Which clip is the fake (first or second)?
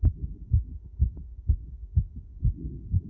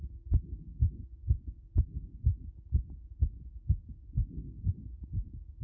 first